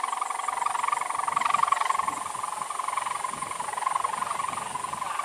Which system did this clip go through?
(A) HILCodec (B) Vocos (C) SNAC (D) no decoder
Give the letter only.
D